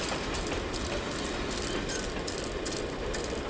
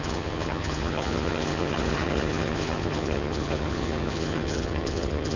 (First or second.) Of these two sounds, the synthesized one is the second